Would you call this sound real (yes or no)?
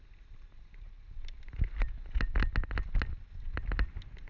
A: yes